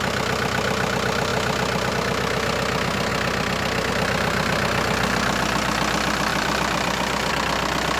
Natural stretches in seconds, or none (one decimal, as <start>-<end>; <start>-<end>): 0.0-6.3; 7.3-8.0